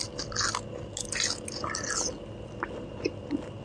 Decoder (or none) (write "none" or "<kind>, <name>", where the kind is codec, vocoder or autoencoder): none